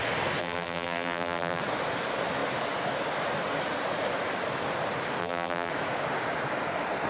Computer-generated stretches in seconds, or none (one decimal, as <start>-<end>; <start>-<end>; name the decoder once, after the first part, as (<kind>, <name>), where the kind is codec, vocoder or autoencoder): 0.4-1.6 (vocoder, BigVGAN v2); 5.2-5.7